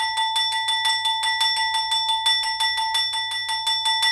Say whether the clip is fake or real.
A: real